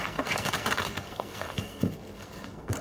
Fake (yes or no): yes